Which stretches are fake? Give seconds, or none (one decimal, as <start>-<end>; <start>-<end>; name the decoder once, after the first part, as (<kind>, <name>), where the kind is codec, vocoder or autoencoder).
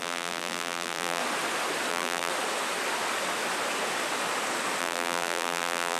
0.0-1.2 (vocoder, BigVGAN v2); 1.9-2.3; 4.8-6.0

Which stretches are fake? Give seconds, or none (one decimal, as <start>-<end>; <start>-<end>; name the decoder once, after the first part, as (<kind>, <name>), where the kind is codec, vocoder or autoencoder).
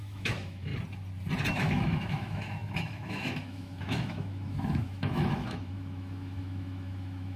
0.0-0.7 (autoencoder, DAC-VAE); 1.5-7.4